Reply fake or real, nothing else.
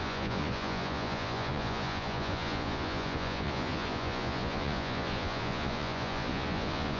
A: fake